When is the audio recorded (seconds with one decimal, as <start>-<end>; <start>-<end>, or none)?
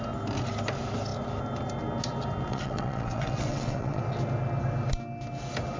0.0-2.5; 4.0-5.8